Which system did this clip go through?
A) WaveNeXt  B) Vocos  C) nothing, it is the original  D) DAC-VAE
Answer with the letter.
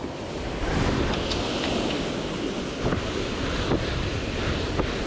C